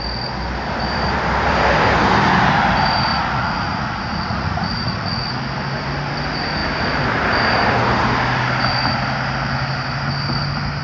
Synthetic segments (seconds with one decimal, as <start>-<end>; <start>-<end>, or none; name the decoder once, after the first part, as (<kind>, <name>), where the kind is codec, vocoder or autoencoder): 3.1-5.3 (vocoder, Vocos)